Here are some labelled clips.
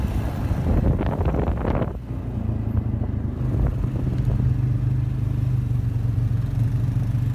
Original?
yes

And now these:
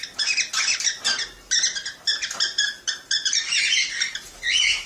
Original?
yes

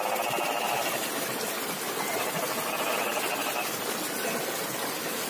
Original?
yes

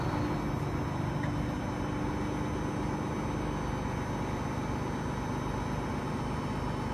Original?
yes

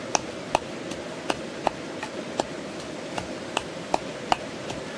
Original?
no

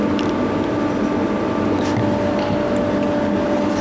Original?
yes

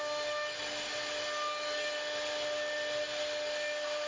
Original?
yes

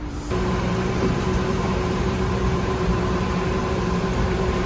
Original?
no